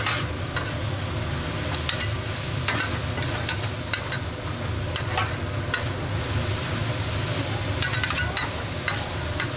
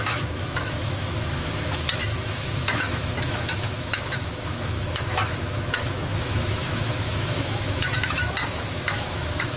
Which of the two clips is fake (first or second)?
second